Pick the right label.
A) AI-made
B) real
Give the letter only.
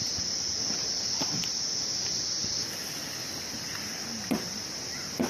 B